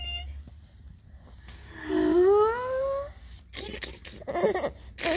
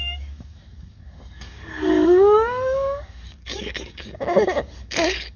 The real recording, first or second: first